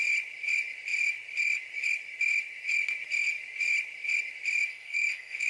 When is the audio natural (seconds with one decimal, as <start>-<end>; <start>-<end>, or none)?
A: 0.0-4.7